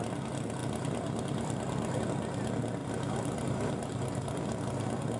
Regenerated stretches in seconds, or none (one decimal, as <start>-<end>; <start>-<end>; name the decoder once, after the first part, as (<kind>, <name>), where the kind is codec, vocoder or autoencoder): 0.6-2.0 (vocoder, BigVGAN v2); 2.8-4.6